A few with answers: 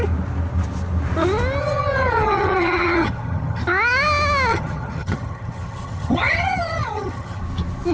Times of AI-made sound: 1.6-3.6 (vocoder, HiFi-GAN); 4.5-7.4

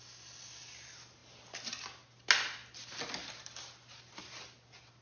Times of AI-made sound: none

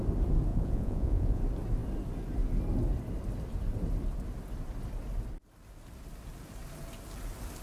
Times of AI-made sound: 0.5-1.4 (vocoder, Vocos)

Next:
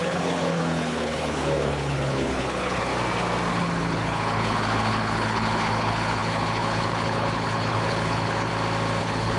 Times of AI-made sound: 0.0-2.9 (codec, HILCodec); 3.5-8.5; 9.0-9.4

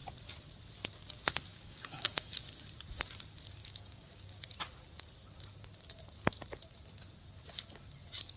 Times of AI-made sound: 1.5-2.4 (codec, DAC); 3.6-4.4

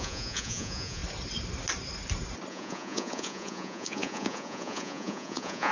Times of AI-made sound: 0.0-1.0 (vocoder, Vocos); 2.5-5.7

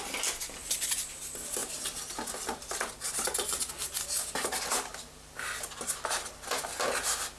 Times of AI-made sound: none